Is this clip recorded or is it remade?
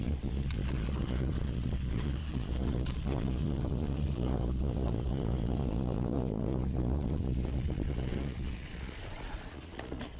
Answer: remade